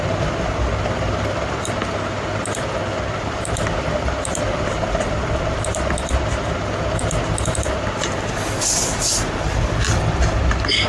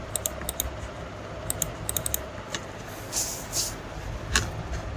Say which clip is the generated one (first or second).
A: first